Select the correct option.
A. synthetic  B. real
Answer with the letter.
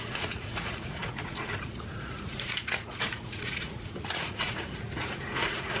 A